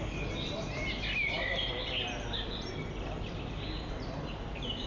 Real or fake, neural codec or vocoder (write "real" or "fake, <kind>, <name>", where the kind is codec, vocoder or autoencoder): real